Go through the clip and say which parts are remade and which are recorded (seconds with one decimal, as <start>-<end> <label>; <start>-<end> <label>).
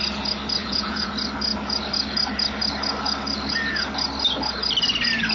0.0-0.6 recorded; 0.6-1.1 remade; 1.1-5.3 recorded